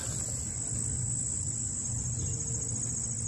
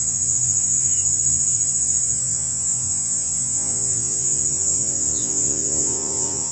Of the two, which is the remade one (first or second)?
second